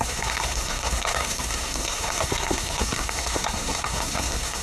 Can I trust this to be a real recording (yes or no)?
no